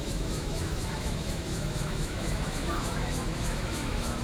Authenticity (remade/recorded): remade